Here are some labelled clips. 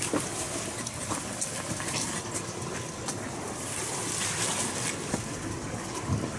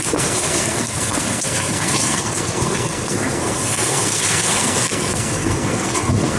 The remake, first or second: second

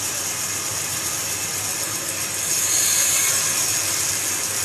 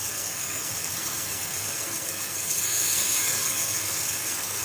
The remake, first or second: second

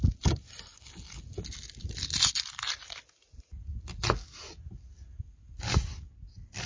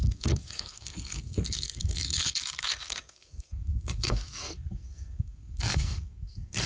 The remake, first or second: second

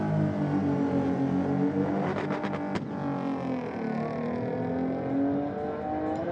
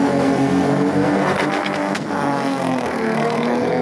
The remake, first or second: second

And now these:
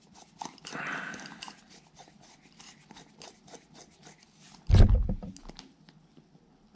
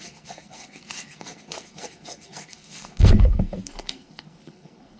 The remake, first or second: second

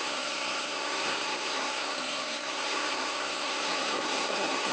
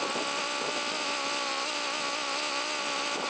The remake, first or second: first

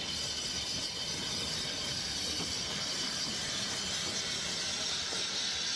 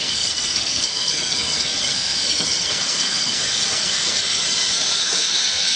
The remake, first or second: second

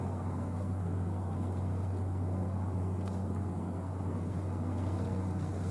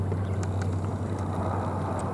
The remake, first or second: first